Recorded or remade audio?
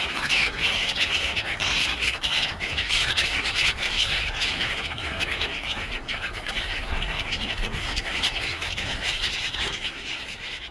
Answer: remade